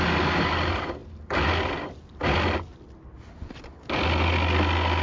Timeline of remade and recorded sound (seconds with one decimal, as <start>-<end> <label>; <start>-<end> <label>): 0.0-5.0 recorded